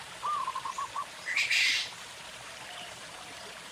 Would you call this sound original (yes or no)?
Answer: no